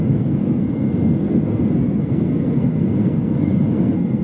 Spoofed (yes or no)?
yes